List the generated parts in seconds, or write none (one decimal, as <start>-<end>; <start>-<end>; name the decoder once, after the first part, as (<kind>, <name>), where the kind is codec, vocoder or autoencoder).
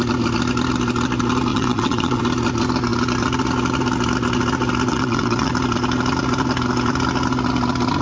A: 1.5-2.2 (vocoder, WaveNeXt); 4.9-5.5